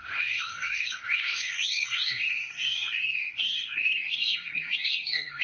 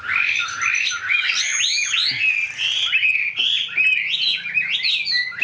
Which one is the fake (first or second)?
first